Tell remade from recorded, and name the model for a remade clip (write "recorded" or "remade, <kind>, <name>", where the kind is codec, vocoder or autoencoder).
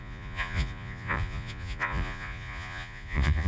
remade, vocoder, Vocos